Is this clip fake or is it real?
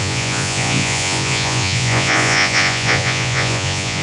fake